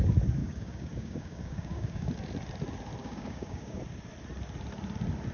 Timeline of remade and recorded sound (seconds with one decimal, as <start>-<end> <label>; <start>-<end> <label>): 0.0-0.4 recorded; 0.4-2.1 remade; 2.1-3.0 recorded; 3.0-3.8 remade; 3.8-5.3 recorded